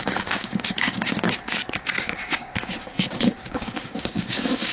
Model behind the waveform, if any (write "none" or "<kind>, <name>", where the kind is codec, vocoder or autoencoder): codec, DAC